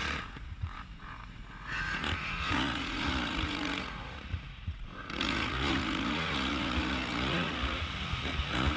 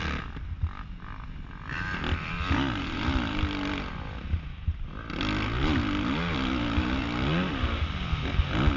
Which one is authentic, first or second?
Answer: second